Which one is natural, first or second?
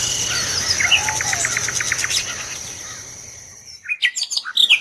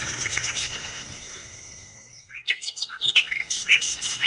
first